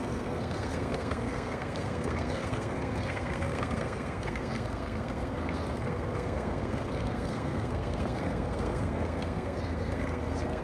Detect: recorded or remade remade